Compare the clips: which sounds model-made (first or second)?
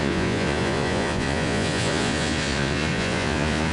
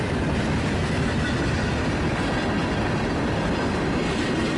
first